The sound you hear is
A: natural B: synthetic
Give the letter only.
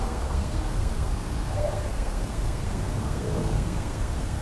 B